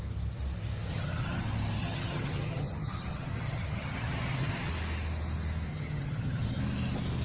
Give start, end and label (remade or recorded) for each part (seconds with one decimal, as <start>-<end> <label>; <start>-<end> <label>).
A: 0.0-0.9 recorded; 0.9-1.4 remade; 1.4-1.8 recorded; 1.8-4.7 remade; 4.7-5.7 recorded; 5.7-6.6 remade; 6.6-7.2 recorded